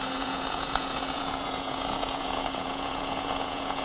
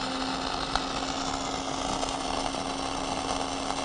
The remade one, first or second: first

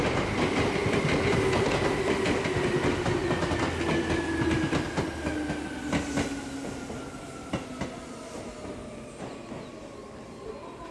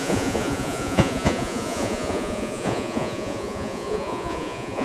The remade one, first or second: second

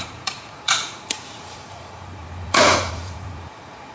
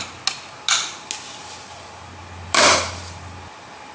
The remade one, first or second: first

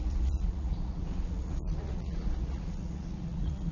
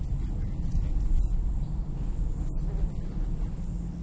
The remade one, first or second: first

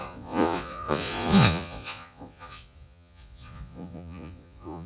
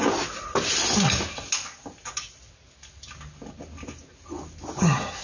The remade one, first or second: first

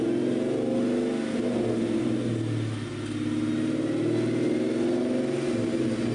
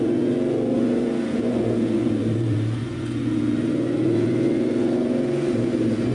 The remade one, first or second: second